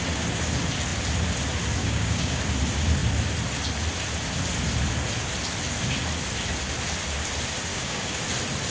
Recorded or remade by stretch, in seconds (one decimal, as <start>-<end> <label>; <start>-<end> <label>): 0.0-1.8 recorded; 1.8-2.4 remade; 2.4-7.7 recorded; 7.7-8.2 remade; 8.2-8.7 recorded